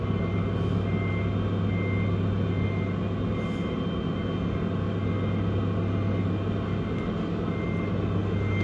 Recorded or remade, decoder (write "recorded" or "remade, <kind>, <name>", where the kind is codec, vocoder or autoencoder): recorded